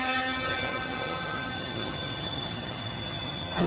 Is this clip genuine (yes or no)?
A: no